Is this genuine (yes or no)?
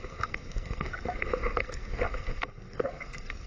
no